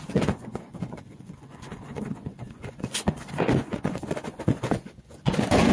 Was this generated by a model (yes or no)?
yes